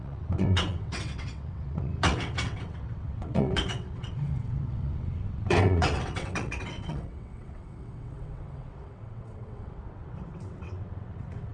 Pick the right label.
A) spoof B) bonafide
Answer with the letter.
A